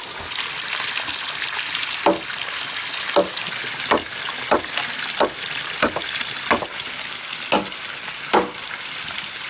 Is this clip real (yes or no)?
yes